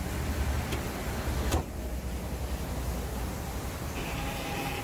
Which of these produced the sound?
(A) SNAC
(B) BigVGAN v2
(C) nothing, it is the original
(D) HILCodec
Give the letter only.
B